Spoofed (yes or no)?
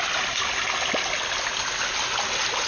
no